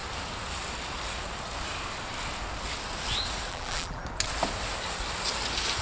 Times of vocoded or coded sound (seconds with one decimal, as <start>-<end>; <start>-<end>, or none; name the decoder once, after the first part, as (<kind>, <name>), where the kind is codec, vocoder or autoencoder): 3.5-4.0 (vocoder, BigVGAN v2)